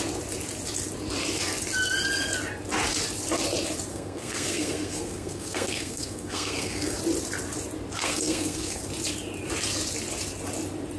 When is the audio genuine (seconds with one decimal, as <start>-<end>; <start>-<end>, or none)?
0.0-3.9; 7.0-8.0; 8.8-11.0